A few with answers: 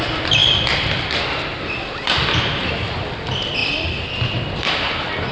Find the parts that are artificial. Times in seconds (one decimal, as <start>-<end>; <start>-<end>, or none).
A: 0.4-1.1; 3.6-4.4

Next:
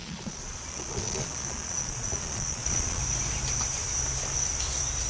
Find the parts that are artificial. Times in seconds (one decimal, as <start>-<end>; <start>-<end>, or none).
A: 0.0-3.0

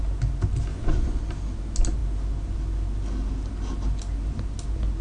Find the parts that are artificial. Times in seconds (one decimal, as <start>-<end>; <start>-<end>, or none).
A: 0.7-1.2

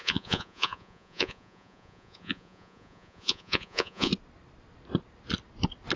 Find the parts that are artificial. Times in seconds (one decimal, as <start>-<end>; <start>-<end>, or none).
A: 0.0-4.1

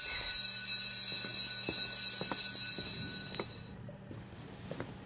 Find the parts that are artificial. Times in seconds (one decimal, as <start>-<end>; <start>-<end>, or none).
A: none

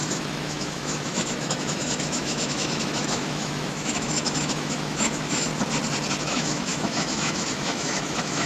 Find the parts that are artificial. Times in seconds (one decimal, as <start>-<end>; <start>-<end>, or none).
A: 0.0-5.5; 6.2-8.5

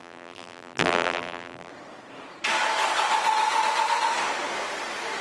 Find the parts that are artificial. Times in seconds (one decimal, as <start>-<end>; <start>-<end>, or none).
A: 0.0-1.7